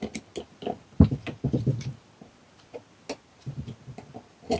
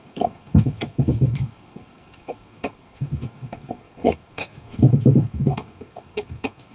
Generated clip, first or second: second